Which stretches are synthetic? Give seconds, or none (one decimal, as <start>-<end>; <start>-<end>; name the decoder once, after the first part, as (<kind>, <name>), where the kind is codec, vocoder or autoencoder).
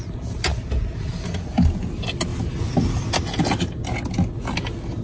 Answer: none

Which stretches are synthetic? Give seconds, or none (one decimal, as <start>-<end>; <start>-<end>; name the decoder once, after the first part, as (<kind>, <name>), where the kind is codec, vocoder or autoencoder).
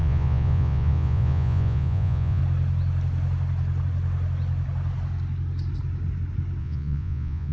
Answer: 0.0-2.4 (vocoder, Vocos); 6.6-7.5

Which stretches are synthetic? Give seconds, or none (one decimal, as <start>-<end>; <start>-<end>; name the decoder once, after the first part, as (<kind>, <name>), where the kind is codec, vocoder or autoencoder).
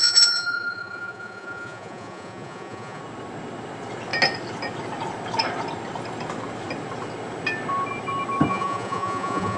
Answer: 0.0-3.0 (vocoder, Vocos); 8.5-9.6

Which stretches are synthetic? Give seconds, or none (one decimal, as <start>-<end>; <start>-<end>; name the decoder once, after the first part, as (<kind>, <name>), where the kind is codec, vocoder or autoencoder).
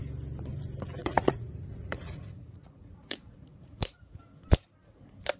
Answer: 1.0-4.2 (vocoder, Vocos)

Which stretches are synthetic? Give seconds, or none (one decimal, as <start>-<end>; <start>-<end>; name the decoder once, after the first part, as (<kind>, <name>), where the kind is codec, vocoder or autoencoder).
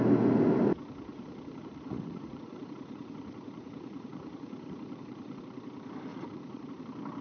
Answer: 1.1-5.4 (vocoder, Vocos); 6.1-6.7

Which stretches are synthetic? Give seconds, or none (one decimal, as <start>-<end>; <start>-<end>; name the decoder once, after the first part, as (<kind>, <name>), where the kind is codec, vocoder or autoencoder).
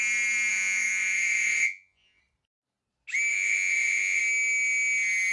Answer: 0.5-2.2 (vocoder, Vocos); 3.3-4.2